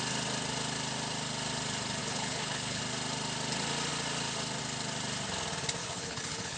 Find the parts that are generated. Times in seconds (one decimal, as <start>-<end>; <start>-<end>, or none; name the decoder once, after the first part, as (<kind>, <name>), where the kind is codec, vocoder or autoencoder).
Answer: 2.0-2.8 (codec, HILCodec); 5.8-6.6